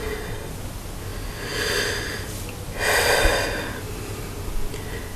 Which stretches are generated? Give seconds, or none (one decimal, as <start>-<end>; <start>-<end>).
0.0-0.5